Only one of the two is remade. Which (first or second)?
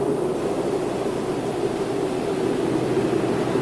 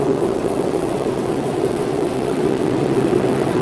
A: second